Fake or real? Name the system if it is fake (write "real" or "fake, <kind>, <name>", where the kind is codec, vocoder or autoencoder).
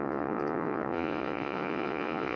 fake, vocoder, Vocos